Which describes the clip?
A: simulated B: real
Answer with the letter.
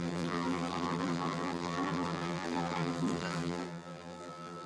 A